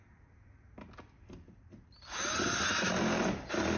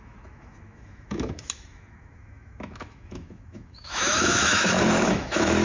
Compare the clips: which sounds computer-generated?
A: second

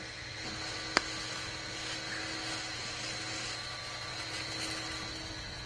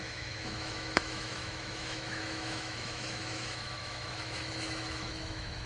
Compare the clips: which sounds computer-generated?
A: second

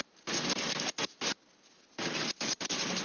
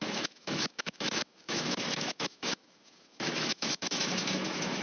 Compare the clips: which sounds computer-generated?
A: second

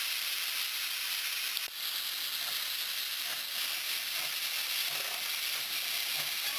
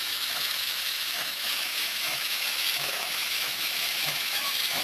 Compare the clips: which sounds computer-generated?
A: second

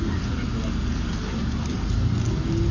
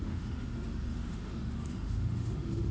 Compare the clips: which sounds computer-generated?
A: second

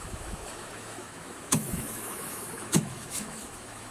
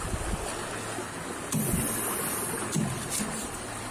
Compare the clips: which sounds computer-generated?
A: first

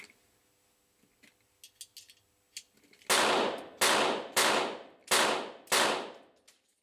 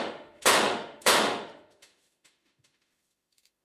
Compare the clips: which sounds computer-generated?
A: second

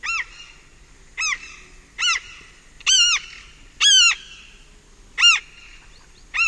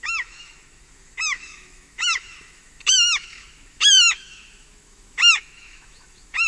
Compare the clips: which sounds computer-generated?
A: second